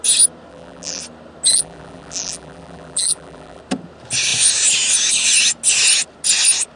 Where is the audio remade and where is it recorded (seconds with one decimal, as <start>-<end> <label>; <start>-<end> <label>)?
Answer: 0.0-0.5 recorded; 0.5-1.0 remade; 1.0-1.5 recorded; 1.5-3.6 remade; 3.6-6.8 recorded